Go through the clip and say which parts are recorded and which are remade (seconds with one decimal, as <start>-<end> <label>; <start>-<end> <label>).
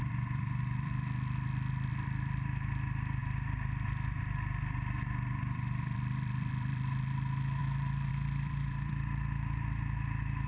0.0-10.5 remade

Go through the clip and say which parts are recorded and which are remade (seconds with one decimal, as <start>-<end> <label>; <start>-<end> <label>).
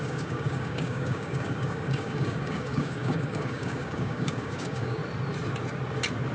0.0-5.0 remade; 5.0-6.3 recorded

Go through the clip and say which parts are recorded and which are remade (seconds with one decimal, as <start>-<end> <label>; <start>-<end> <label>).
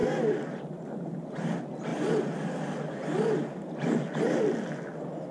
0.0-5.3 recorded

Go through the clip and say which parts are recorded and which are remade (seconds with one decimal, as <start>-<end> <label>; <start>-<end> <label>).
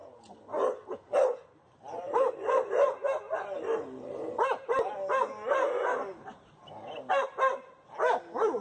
0.0-8.6 recorded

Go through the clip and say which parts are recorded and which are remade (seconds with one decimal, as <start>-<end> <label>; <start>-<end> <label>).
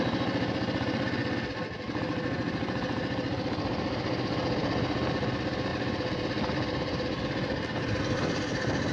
0.0-8.9 recorded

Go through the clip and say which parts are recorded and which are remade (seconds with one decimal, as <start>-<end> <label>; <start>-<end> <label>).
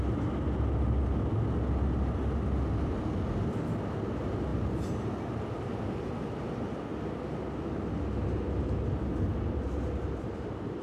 0.0-10.8 recorded